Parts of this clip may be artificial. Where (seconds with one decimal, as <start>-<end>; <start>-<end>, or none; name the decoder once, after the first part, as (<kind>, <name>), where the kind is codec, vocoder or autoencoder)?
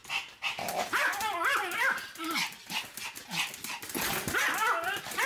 none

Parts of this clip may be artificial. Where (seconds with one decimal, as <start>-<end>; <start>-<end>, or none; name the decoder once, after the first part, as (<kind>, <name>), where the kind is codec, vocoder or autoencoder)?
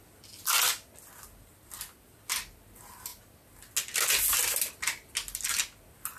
none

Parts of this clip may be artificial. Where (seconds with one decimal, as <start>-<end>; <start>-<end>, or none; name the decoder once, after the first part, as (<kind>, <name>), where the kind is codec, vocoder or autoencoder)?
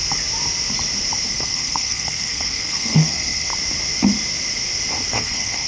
1.3-3.5 (codec, SNAC); 5.1-5.7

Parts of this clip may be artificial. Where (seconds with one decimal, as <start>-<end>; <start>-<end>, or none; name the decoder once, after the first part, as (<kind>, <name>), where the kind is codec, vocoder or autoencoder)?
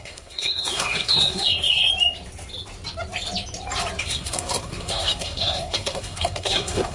0.0-1.9 (codec, SNAC); 4.0-6.9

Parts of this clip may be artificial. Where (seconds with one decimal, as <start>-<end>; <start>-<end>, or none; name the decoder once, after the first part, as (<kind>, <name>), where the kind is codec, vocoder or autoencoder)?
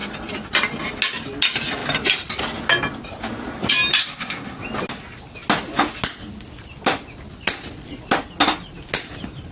4.0-4.6 (codec, SNAC)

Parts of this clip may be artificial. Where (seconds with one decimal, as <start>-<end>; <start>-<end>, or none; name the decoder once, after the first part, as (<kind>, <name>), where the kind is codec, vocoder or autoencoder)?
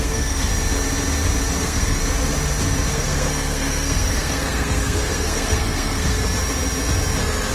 0.0-0.5 (codec, SNAC); 1.6-2.0; 2.9-6.2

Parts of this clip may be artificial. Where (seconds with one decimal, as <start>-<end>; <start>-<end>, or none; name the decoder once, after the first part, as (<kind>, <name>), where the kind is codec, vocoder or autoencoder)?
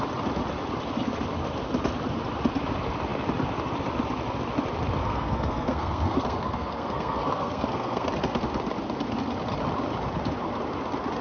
5.0-8.1 (codec, SNAC)